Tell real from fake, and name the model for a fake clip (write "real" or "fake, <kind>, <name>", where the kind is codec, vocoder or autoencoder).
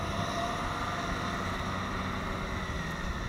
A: real